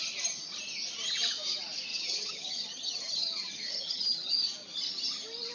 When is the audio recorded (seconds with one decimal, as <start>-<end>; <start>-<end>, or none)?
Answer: 0.0-1.9; 4.3-5.5